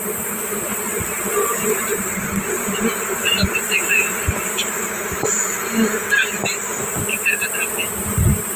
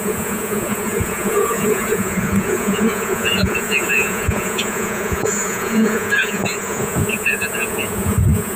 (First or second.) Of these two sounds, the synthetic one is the second